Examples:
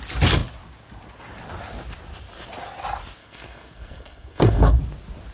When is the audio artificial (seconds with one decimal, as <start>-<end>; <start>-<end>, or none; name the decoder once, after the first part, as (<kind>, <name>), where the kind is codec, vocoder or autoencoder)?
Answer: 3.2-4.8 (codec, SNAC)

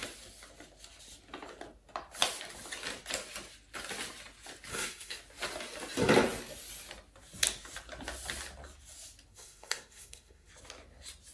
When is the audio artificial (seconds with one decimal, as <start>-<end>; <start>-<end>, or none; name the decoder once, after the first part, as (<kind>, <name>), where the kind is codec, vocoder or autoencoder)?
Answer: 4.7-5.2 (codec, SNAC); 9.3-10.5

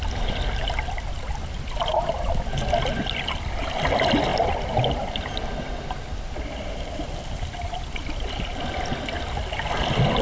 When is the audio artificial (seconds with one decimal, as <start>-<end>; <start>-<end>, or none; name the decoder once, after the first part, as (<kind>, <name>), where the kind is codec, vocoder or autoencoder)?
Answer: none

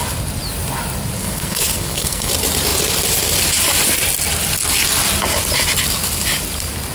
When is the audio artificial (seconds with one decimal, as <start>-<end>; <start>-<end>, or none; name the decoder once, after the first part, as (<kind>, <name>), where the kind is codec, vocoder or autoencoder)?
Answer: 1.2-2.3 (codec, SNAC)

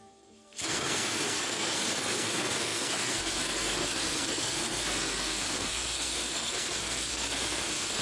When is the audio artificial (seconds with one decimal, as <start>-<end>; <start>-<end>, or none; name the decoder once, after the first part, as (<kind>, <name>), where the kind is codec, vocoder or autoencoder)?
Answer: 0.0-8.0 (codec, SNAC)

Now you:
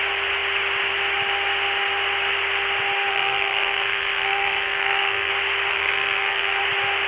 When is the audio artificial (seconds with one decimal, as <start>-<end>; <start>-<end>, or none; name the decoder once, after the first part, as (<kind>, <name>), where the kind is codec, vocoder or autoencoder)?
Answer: 3.1-5.3 (codec, SNAC); 5.7-6.6